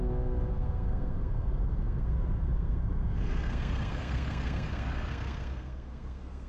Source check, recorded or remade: remade